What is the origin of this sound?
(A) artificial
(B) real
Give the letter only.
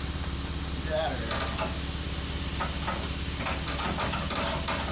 B